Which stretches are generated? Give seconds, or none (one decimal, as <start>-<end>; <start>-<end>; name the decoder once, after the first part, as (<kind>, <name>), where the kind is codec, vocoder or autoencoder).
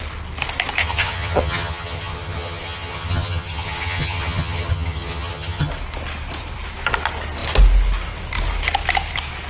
0.8-5.7 (vocoder, HiFi-GAN)